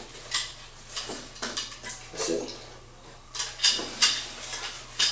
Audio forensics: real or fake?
real